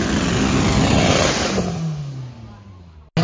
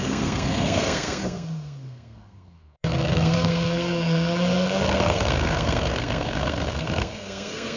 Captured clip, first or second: first